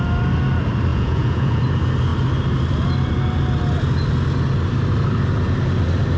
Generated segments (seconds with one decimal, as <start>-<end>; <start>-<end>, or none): 0.9-1.6